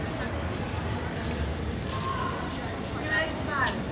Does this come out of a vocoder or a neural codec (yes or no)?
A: yes